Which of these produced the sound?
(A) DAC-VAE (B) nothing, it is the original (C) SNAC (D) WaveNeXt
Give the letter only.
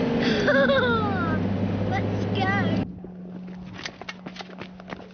B